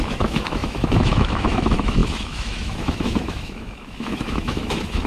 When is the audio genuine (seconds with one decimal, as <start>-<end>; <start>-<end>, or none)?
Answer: none